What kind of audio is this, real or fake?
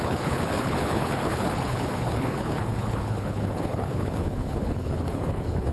fake